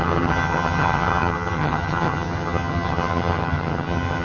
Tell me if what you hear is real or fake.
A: fake